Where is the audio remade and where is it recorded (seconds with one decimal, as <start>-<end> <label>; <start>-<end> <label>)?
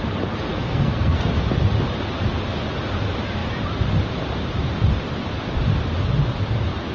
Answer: 0.0-0.5 recorded; 0.5-1.3 remade; 1.3-6.9 recorded